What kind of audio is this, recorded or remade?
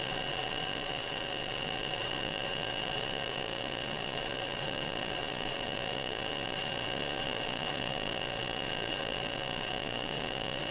remade